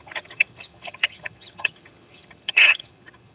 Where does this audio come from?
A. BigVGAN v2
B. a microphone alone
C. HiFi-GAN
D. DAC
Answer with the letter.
C